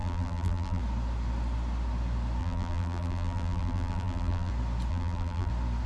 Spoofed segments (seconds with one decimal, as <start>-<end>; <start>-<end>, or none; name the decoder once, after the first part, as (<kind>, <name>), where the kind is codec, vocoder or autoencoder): 0.0-0.8 (vocoder, BigVGAN v2); 2.4-4.5; 4.9-5.5